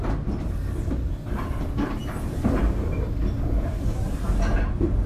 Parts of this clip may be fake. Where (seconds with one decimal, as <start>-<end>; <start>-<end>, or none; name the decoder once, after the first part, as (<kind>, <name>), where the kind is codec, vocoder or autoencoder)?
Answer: 2.0-2.6 (vocoder, BigVGAN v2)